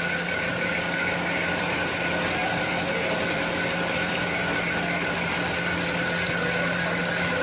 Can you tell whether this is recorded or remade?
recorded